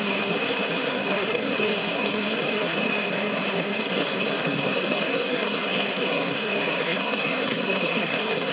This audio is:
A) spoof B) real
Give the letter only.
A